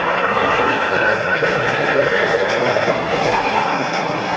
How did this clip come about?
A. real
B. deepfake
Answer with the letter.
B